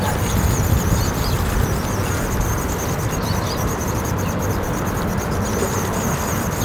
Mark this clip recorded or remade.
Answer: recorded